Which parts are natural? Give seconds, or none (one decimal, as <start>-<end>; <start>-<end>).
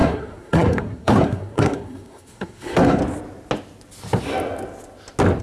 3.0-5.4